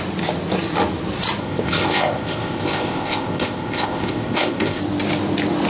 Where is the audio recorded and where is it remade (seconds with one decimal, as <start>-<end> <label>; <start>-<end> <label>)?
0.0-1.4 recorded; 1.4-4.8 remade; 4.8-5.7 recorded